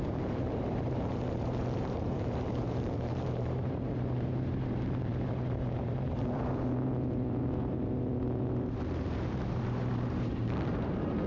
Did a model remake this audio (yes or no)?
yes